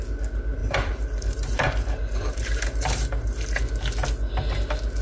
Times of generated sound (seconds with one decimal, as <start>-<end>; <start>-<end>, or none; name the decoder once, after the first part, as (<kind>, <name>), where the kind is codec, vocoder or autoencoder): 0.6-3.6 (vocoder, BigVGAN v2)